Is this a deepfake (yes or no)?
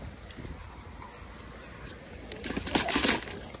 no